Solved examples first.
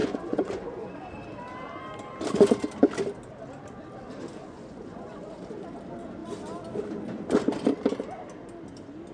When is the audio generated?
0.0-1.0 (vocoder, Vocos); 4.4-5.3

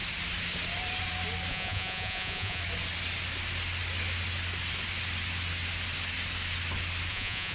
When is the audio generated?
1.5-2.6 (vocoder, Vocos); 7.1-7.5

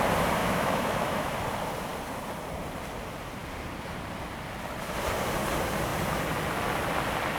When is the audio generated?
0.4-1.3 (autoencoder, DAC-VAE)

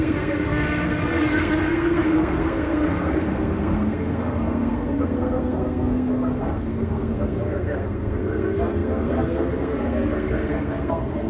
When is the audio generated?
0.0-11.3 (codec, SNAC)

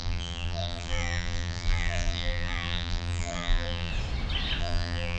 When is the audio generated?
0.0-3.9 (vocoder, BigVGAN v2); 4.6-5.2